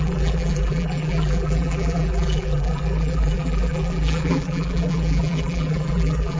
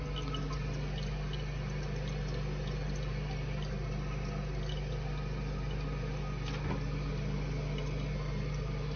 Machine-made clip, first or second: first